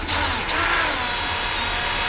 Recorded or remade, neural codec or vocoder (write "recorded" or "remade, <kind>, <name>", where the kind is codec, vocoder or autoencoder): recorded